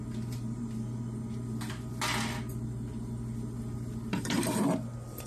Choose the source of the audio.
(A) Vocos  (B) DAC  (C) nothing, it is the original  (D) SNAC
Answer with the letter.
C